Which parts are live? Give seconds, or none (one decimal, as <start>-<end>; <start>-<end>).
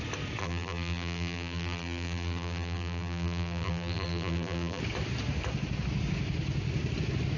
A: 0.0-0.4; 4.8-7.4